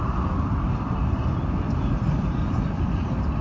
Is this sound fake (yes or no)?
no